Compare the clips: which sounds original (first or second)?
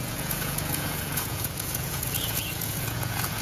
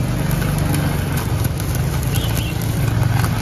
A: second